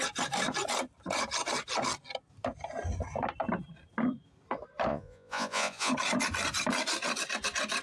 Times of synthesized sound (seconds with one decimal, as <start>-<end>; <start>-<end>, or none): 4.9-5.9